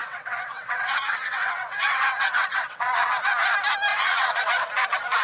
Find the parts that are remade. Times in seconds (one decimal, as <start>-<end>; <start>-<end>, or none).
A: 0.0-3.1; 3.9-4.7